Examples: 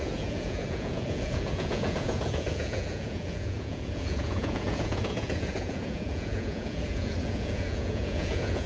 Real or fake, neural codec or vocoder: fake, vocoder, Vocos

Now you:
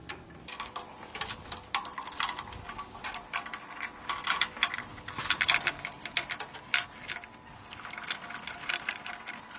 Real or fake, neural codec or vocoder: real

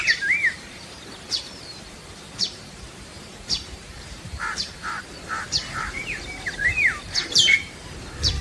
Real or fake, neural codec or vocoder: fake, vocoder, BigVGAN v2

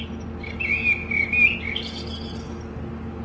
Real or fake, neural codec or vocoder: real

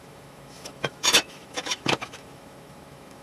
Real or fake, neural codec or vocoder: fake, autoencoder, DAC-VAE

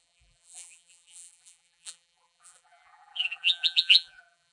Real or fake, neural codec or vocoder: fake, vocoder, BigVGAN v2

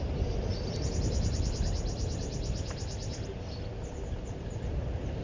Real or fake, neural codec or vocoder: real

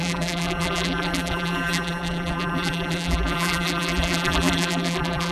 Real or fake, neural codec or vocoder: fake, vocoder, BigVGAN v2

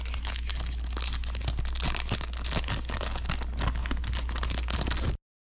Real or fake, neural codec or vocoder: real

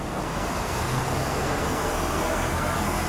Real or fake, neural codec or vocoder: fake, codec, SNAC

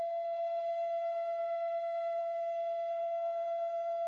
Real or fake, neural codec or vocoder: fake, codec, SNAC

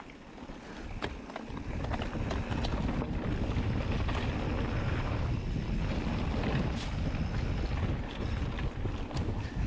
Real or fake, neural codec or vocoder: real